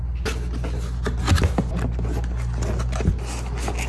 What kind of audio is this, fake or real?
real